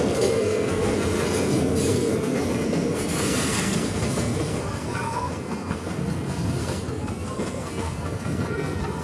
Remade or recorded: remade